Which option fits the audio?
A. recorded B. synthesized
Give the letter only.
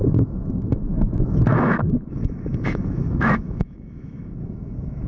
B